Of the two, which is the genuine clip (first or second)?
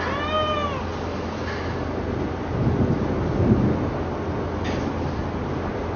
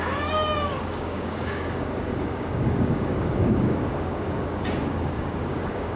first